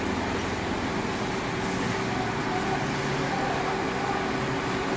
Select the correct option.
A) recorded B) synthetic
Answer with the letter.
A